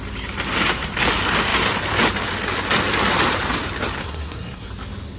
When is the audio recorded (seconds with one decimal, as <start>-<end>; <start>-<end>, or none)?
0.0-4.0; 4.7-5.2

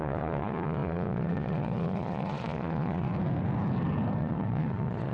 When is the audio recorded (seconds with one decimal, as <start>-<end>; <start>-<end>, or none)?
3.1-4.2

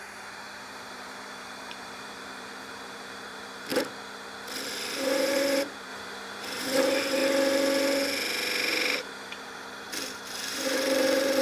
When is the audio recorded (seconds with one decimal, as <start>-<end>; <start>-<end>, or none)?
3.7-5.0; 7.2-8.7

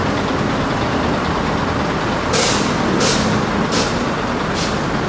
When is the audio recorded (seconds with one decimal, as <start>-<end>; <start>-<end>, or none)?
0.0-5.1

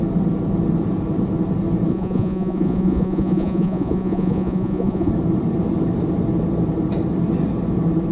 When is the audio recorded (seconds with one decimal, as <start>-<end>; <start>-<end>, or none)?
0.0-1.9; 5.1-8.1

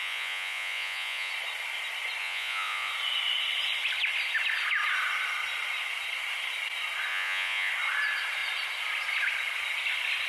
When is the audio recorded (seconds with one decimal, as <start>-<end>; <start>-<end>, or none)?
1.3-2.2; 2.9-7.1; 7.7-10.3

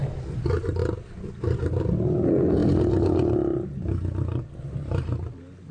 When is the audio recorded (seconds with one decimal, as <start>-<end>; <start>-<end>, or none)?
0.0-5.7

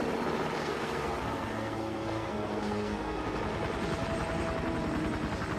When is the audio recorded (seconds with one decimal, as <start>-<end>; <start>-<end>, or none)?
0.0-0.6; 3.2-5.6